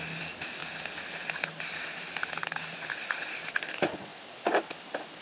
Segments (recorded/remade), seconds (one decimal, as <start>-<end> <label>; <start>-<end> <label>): 0.0-5.2 recorded